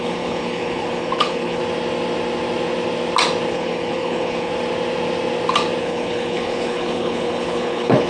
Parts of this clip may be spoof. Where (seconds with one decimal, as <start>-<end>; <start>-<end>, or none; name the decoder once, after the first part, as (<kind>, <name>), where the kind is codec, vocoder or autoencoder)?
0.0-1.6 (codec, HILCodec); 3.5-4.5; 5.8-8.1